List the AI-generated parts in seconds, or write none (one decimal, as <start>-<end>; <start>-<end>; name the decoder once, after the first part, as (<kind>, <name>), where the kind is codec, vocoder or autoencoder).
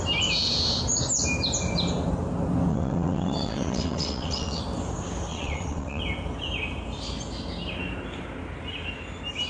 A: 2.7-4.6 (vocoder, WaveNeXt); 5.3-6.0